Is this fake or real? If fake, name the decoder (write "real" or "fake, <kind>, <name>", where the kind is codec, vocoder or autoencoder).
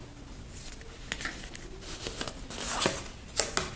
real